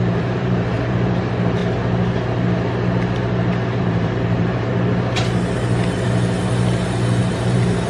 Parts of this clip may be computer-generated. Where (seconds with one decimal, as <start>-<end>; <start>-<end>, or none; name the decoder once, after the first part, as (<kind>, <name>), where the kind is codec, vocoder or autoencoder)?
0.0-1.6 (vocoder, BigVGAN v2); 3.8-4.7; 7.2-7.9

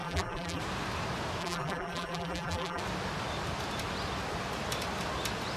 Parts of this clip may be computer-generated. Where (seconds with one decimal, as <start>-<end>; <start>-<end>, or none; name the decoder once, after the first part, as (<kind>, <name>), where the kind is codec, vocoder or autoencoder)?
0.0-0.6 (vocoder, BigVGAN v2); 1.4-2.8

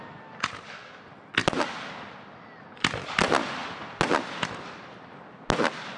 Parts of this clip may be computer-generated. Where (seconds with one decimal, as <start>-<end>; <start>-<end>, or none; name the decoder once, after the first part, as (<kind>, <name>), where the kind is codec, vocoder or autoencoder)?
1.4-2.4 (vocoder, BigVGAN v2)